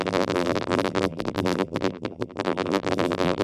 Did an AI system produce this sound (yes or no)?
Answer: yes